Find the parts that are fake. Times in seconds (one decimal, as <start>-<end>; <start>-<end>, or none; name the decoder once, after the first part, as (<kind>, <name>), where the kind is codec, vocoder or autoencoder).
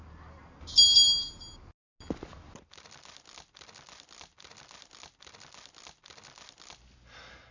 none